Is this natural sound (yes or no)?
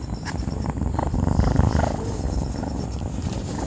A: no